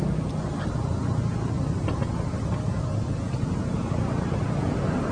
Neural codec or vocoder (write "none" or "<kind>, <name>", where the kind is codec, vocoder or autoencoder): none